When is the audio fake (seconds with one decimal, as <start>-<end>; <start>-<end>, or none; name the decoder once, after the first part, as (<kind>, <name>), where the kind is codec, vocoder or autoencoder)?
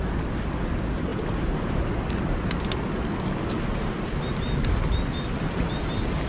none